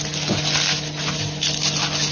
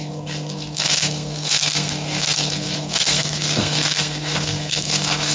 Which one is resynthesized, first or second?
second